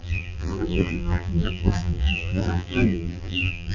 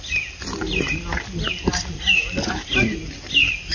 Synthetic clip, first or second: first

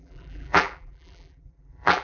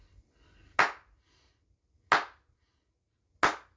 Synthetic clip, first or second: first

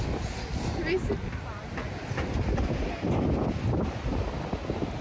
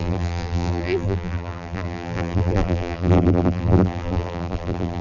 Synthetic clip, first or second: second